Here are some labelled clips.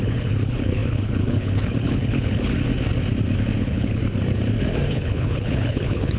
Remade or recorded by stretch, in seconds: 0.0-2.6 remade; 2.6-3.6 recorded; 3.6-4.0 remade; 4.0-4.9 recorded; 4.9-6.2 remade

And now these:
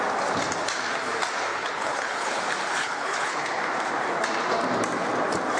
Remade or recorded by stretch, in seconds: 0.0-1.5 recorded; 1.5-2.4 remade; 2.4-2.8 recorded; 2.8-3.6 remade; 3.6-5.6 recorded

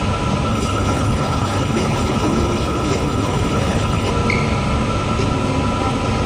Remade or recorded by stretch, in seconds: 0.0-0.5 recorded; 0.5-4.1 remade; 4.1-6.3 recorded

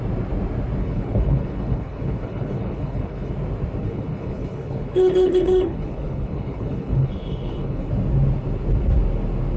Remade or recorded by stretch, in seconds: 0.0-0.8 recorded; 0.8-3.3 remade; 3.3-3.8 recorded; 3.8-7.9 remade; 7.9-9.6 recorded

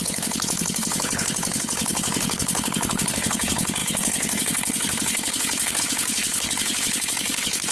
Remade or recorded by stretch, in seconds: 0.0-7.7 remade